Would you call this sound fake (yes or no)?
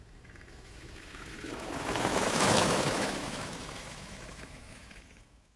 yes